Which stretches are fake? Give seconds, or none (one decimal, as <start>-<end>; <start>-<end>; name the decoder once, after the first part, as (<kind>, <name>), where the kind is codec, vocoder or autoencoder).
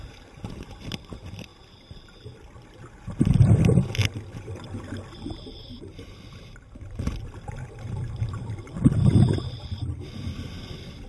0.0-11.1 (vocoder, BigVGAN v2)